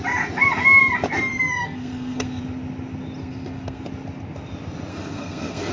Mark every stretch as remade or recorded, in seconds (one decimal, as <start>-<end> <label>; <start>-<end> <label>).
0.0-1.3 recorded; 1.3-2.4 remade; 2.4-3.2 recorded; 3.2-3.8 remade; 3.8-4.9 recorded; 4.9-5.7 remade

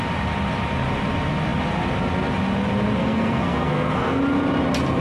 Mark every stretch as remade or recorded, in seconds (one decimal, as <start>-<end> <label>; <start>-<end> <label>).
0.0-3.0 recorded; 3.0-4.2 remade; 4.2-5.0 recorded

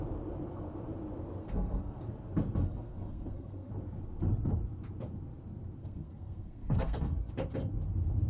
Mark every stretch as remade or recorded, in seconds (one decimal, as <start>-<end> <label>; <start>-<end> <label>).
0.0-1.4 recorded; 1.4-2.0 remade; 2.0-2.6 recorded; 2.6-3.7 remade; 3.7-5.8 recorded; 5.8-7.3 remade; 7.3-8.3 recorded

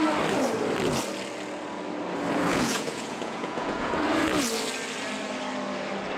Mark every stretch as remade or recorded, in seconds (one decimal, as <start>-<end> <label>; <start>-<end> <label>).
0.0-2.5 recorded; 2.5-3.9 remade; 3.9-6.2 recorded

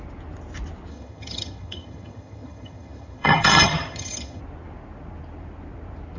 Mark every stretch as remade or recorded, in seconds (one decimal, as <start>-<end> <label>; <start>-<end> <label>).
0.0-0.9 recorded; 0.9-4.4 remade; 4.4-6.2 recorded